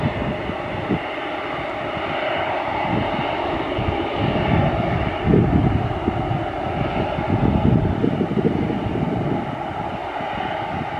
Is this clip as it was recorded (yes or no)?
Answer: yes